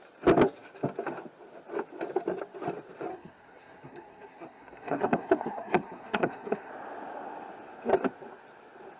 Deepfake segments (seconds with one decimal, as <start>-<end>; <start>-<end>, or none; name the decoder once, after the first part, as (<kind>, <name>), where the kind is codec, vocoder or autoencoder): 3.1-6.7 (codec, SNAC)